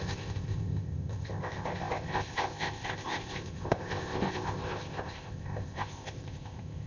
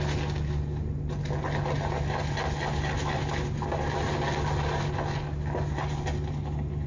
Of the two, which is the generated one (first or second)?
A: first